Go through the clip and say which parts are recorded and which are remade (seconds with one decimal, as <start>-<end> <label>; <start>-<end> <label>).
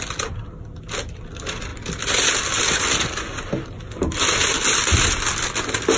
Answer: 0.0-6.0 recorded